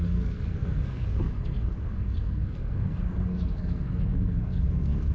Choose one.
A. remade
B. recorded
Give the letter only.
A